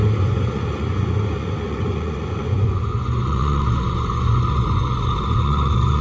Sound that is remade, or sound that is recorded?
remade